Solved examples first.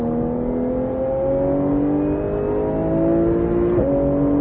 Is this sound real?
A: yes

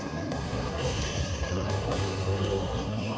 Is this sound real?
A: no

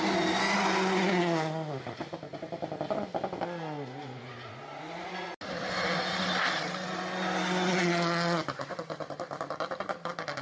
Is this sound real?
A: yes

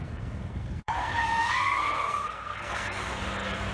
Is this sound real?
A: no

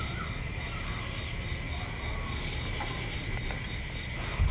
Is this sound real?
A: yes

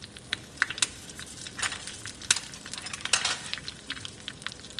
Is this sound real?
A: yes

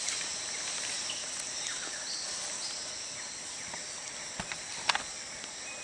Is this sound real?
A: yes